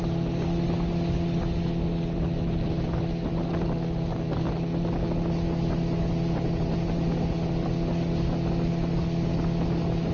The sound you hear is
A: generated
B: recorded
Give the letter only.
B